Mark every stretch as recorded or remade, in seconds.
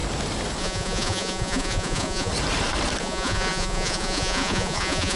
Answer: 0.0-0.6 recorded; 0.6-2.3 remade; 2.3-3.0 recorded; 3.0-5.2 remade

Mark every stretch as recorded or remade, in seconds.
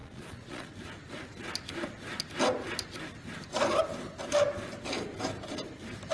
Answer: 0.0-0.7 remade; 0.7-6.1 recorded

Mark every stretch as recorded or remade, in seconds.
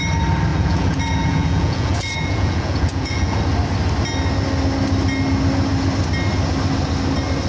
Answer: 0.0-0.5 recorded; 0.5-3.4 remade; 3.4-7.5 recorded